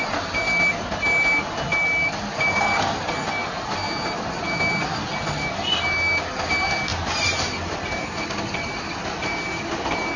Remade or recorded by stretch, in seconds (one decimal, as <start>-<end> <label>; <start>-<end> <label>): 0.0-10.2 recorded